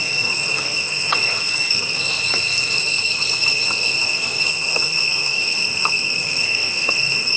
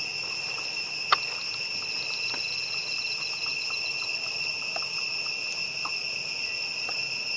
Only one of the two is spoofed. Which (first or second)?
first